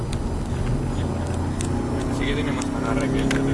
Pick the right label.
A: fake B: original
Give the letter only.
B